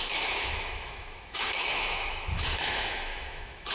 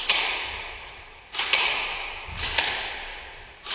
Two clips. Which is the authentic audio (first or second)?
second